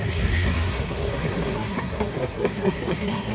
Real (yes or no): no